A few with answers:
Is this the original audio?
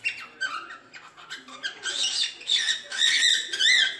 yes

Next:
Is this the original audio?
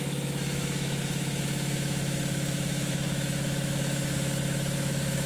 no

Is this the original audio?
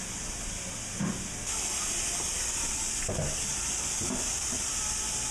yes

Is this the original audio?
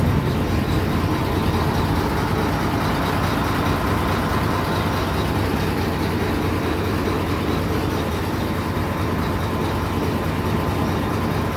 yes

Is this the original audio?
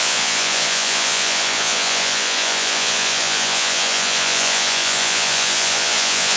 no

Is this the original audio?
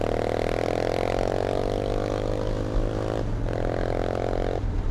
yes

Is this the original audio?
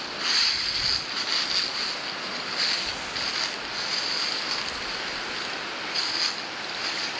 yes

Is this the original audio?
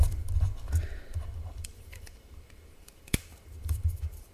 no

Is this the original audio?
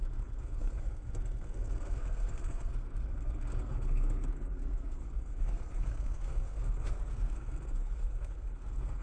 no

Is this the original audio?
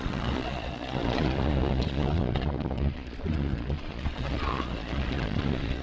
no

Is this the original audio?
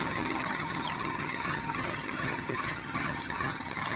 no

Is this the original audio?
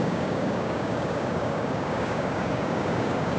no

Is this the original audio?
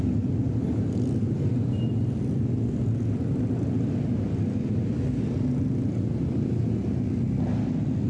yes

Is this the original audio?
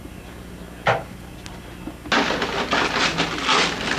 yes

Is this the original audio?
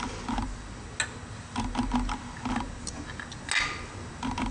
yes